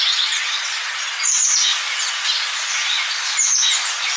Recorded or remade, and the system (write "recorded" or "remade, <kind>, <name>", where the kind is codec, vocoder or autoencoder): recorded